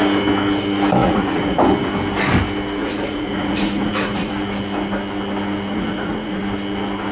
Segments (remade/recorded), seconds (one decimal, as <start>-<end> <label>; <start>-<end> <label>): 0.0-1.0 recorded; 1.0-1.6 remade; 1.6-2.8 recorded; 2.8-4.3 remade; 4.3-5.7 recorded; 5.7-6.4 remade; 6.4-7.1 recorded